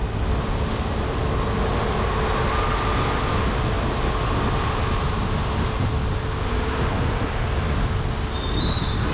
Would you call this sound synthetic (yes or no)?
no